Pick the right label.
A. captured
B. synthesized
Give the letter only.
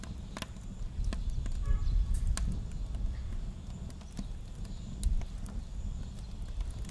A